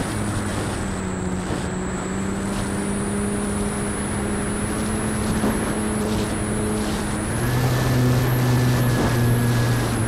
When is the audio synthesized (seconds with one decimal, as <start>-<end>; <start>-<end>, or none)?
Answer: none